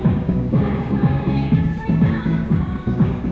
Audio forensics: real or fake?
fake